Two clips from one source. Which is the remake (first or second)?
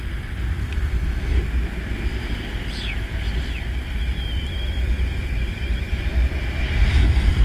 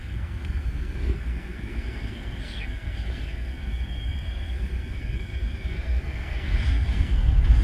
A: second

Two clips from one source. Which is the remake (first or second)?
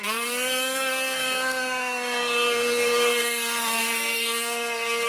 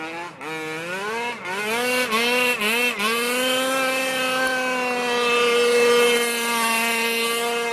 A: first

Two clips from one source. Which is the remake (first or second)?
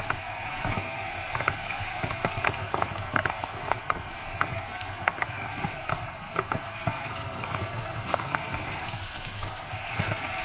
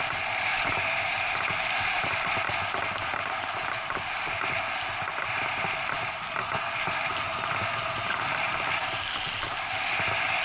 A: first